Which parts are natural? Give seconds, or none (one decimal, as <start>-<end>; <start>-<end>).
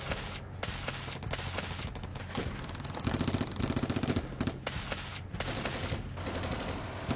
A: 0.0-7.2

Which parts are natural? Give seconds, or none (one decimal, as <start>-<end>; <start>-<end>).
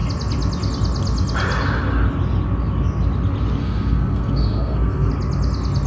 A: 0.0-3.6; 5.1-5.9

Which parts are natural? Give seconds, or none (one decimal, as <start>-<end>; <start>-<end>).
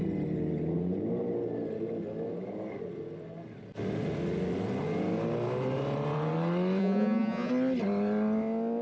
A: 0.0-6.8; 7.5-8.8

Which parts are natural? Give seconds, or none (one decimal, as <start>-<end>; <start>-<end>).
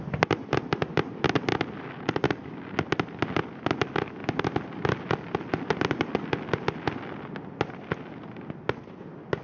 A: 0.0-9.4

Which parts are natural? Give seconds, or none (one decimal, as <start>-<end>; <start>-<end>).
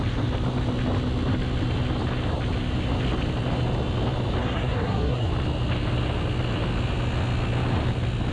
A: 0.0-4.4; 5.3-8.3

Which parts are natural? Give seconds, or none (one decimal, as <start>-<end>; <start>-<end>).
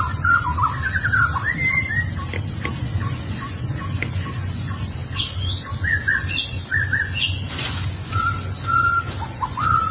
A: 0.5-2.8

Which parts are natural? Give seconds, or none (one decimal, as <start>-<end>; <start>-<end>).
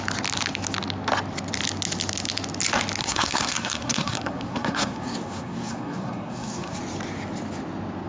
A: 0.0-3.0; 6.8-8.1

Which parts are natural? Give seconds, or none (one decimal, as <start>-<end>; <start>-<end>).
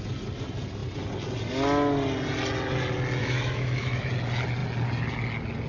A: 0.0-3.2; 4.1-5.7